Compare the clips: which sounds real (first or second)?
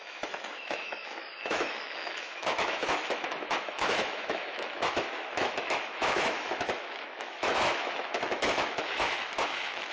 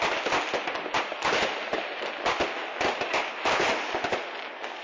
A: second